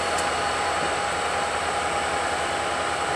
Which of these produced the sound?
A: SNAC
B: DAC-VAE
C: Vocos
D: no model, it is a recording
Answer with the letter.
D